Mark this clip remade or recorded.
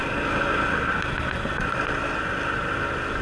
recorded